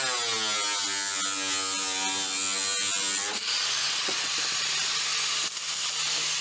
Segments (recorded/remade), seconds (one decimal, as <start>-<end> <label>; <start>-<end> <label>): 0.0-3.8 recorded; 3.8-4.3 remade; 4.3-6.4 recorded